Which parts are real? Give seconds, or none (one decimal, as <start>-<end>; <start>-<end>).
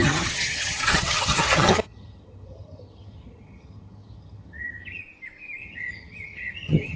5.0-5.6